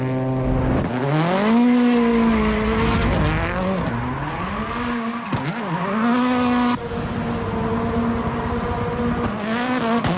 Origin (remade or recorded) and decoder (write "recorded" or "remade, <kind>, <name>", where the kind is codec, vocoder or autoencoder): recorded